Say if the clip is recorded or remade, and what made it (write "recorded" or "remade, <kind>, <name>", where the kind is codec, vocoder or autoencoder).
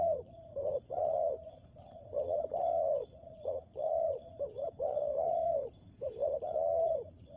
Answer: remade, vocoder, Vocos